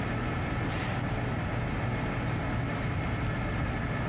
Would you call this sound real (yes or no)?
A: yes